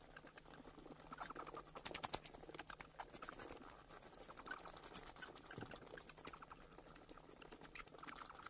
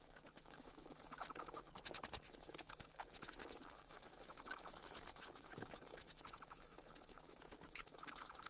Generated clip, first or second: second